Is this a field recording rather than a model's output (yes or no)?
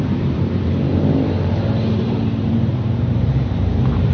no